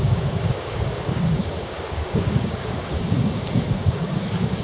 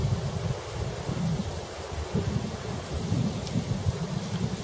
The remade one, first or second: first